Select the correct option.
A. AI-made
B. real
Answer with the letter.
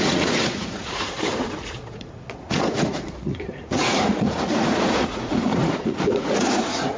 A